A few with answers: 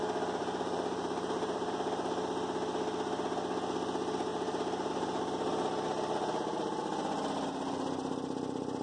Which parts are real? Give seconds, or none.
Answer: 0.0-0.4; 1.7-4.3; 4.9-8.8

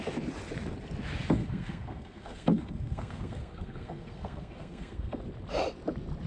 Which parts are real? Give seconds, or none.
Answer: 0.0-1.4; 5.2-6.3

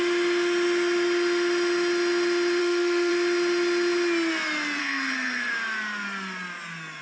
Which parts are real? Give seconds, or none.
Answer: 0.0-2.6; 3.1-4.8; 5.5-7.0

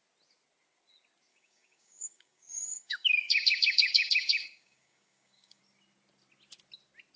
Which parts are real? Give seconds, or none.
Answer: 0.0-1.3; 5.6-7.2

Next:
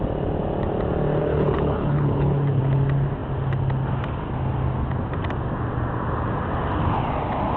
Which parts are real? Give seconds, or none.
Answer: 0.0-1.2; 2.6-7.6